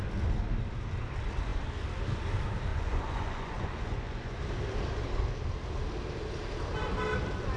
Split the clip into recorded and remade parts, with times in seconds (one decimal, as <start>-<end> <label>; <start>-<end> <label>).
0.0-2.7 recorded; 2.7-4.4 remade; 4.4-7.6 recorded